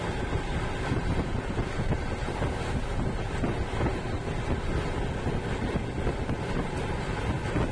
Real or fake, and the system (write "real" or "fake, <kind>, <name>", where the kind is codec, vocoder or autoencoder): real